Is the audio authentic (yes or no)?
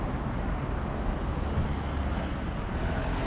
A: yes